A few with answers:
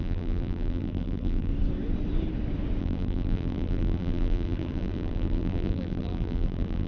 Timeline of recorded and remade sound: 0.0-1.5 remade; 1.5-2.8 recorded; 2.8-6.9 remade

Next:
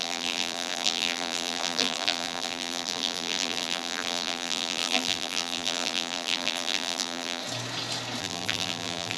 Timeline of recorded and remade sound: 0.0-7.4 remade; 7.4-8.2 recorded; 8.2-9.2 remade

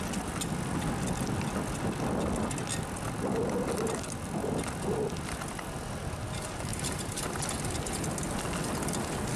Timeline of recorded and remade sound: 0.0-6.7 recorded; 6.7-7.4 remade; 7.4-9.4 recorded

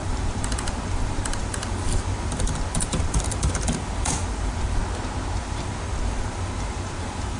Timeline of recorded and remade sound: 0.0-4.8 remade; 4.8-5.4 recorded; 5.4-7.4 remade

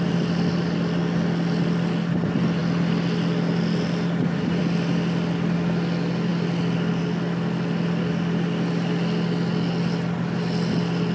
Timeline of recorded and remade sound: 0.0-11.1 recorded

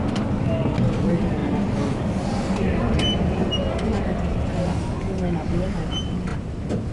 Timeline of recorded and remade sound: 0.0-6.9 recorded

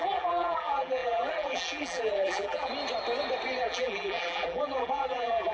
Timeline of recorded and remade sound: 0.0-2.7 remade; 2.7-3.6 recorded; 3.6-5.5 remade

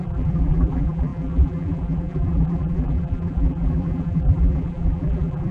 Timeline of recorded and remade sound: 0.0-5.5 remade